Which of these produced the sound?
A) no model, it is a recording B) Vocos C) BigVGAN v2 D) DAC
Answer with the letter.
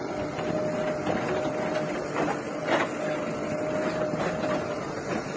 A